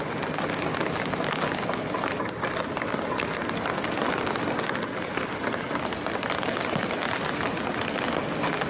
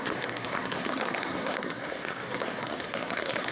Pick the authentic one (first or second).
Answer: first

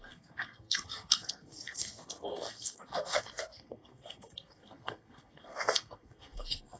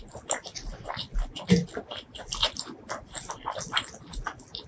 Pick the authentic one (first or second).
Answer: second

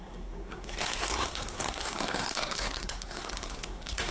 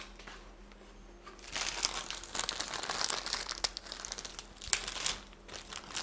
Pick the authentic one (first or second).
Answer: second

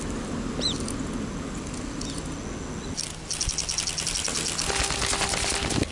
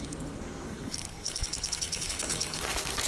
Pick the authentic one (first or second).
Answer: first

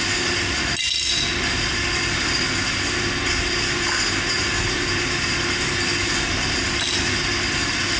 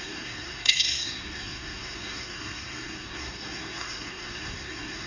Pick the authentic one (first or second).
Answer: first